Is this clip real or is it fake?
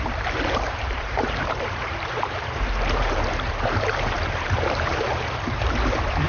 fake